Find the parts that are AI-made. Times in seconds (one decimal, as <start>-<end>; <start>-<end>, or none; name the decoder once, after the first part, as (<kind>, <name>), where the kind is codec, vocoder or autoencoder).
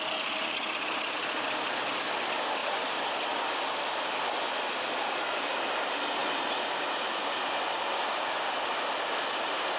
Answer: 2.6-5.4 (vocoder, BigVGAN v2)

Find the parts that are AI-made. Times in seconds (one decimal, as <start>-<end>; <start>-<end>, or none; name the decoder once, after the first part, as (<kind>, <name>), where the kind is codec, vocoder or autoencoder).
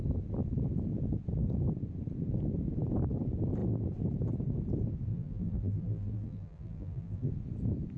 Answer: 5.1-7.3 (vocoder, BigVGAN v2)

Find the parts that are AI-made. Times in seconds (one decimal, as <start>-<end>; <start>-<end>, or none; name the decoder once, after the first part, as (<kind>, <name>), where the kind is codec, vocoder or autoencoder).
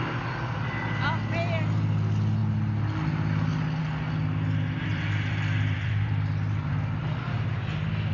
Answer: 4.9-7.0 (vocoder, BigVGAN v2)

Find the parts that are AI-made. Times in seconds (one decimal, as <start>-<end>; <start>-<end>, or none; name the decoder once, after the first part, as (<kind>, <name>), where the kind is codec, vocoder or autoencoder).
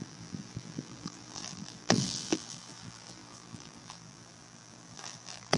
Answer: 0.0-5.6 (vocoder, BigVGAN v2)